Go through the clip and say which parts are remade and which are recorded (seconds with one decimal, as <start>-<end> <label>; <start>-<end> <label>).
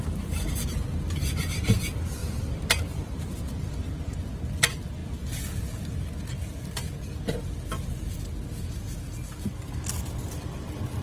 0.0-2.2 recorded; 2.2-3.4 remade; 3.4-11.0 recorded